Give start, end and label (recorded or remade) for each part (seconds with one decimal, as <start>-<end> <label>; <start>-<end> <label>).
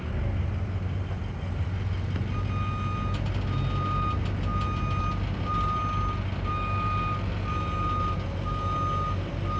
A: 0.0-9.6 recorded